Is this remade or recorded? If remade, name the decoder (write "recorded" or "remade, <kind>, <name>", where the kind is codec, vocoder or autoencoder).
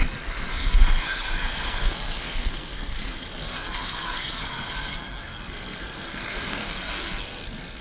remade, codec, SNAC